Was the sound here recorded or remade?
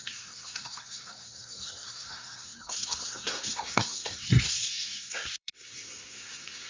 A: remade